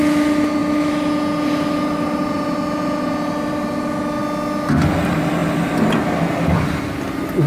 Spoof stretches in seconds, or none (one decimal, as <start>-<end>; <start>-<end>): none

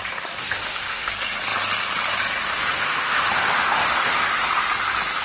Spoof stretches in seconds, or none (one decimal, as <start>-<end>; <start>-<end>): 0.4-1.1; 2.5-4.5

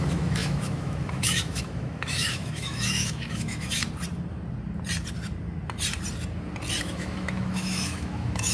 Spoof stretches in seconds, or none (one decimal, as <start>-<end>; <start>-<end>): 0.0-3.8; 6.8-8.5

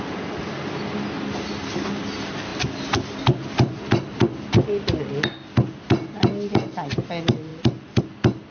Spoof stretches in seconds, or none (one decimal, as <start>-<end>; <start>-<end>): none

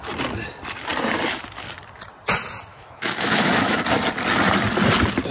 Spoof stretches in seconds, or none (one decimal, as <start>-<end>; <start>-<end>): 2.7-3.8

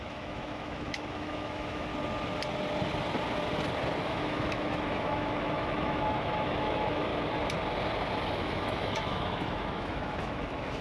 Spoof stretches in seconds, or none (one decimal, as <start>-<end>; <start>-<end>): 0.0-1.9; 4.0-7.1; 8.4-10.8

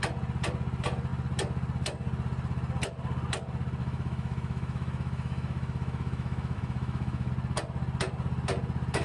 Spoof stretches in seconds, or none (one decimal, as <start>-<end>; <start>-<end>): 3.8-7.3

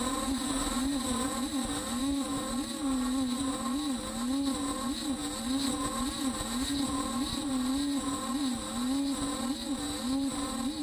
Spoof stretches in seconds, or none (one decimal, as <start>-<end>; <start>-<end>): 2.0-2.5